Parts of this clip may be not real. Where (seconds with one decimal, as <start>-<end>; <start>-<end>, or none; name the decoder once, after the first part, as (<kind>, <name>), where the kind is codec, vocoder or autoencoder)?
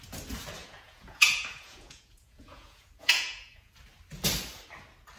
0.6-3.7 (vocoder, Vocos)